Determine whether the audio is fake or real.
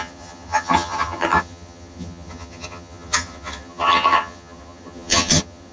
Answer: fake